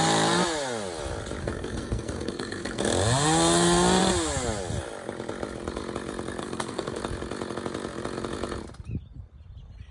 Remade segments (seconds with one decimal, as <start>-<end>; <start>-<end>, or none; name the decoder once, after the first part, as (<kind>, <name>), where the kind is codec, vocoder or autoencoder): 1.4-2.8 (codec, SNAC); 6.4-7.0